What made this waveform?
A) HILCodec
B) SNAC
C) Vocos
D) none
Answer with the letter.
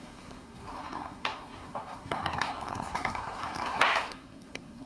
B